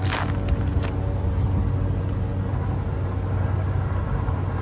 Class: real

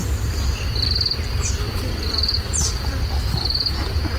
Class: fake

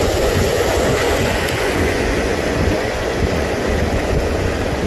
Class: fake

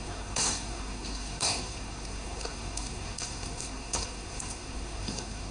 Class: fake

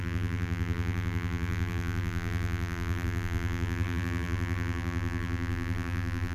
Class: fake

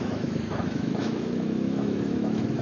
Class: fake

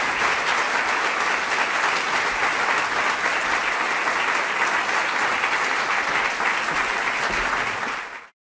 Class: real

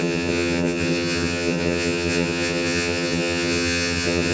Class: fake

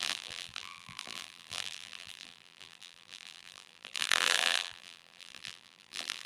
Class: fake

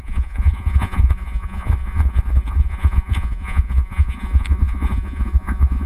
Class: fake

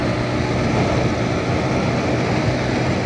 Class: real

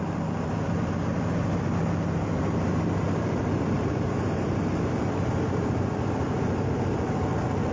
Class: fake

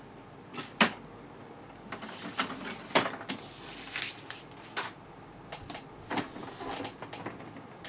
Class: real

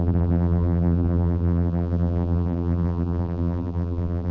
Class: fake